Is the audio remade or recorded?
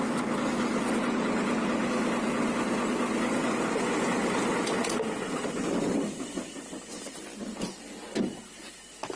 recorded